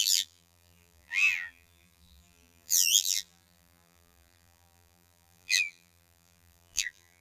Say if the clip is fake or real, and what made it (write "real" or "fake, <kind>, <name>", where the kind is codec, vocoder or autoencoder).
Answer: fake, vocoder, BigVGAN v2